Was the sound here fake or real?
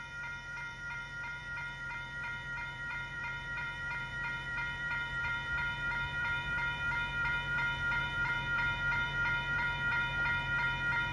fake